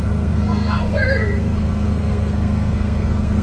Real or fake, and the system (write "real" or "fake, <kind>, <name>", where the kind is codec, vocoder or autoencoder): fake, codec, SNAC